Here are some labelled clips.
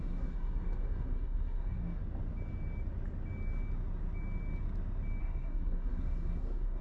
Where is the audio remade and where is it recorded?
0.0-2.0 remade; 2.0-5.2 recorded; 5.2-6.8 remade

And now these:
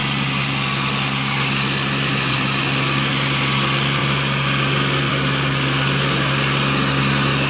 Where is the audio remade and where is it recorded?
0.0-7.5 recorded

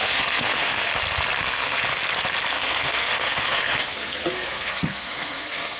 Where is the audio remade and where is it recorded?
0.0-0.9 remade; 0.9-1.4 recorded; 1.4-1.8 remade; 1.8-2.5 recorded; 2.5-5.8 remade

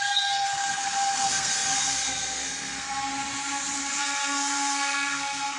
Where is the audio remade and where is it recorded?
0.0-3.1 remade; 3.1-4.0 recorded; 4.0-5.6 remade

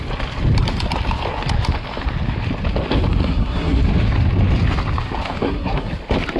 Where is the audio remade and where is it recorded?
0.0-3.2 recorded; 3.2-3.8 remade; 3.8-5.4 recorded; 5.4-5.9 remade; 5.9-6.4 recorded

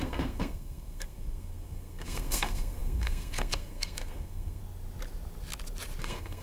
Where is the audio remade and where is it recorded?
0.0-4.6 remade; 4.6-6.0 recorded; 6.0-6.4 remade

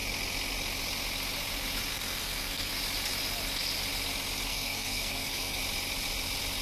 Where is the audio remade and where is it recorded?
0.0-1.9 recorded; 1.9-2.7 remade; 2.7-4.5 recorded; 4.5-5.6 remade; 5.6-6.6 recorded